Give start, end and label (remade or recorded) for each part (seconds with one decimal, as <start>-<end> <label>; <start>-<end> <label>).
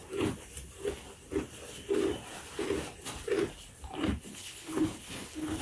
0.0-4.3 recorded; 4.3-5.6 remade